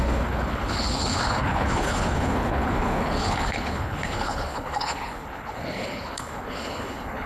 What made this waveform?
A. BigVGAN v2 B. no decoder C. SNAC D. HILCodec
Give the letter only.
D